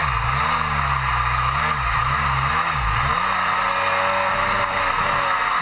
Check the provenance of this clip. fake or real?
real